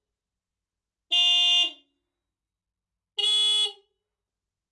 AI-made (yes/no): no